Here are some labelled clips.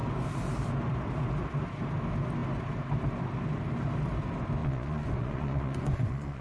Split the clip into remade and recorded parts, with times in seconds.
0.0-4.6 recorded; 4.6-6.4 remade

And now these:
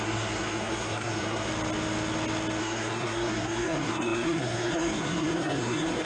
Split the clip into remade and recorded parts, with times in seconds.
0.0-1.5 remade; 1.5-2.6 recorded; 2.6-6.1 remade